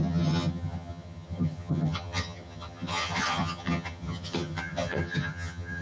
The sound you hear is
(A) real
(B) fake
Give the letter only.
B